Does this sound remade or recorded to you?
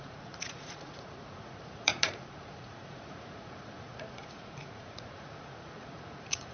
remade